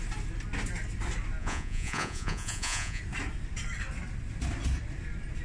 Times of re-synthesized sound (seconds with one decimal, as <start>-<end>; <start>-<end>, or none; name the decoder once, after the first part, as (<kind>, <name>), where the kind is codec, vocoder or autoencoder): 1.4-3.0 (vocoder, Vocos)